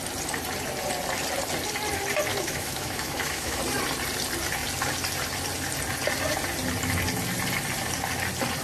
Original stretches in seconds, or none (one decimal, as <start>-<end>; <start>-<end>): 0.0-2.3; 3.6-8.6